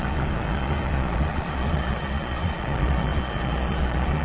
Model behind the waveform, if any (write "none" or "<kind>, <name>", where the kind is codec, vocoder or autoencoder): vocoder, Vocos